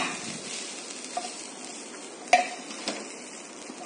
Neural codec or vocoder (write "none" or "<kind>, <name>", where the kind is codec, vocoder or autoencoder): none